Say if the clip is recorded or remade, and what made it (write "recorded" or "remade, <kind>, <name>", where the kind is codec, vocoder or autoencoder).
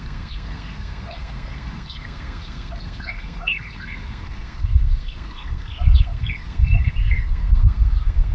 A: remade, codec, SNAC